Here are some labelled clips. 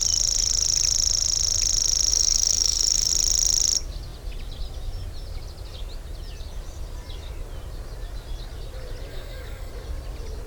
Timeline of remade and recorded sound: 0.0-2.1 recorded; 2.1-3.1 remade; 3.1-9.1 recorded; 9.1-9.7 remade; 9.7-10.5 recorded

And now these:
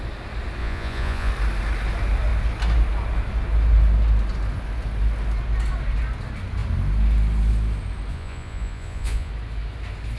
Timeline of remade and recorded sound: 0.0-0.6 recorded; 0.6-1.3 remade; 1.3-8.1 recorded; 8.1-9.3 remade; 9.3-10.2 recorded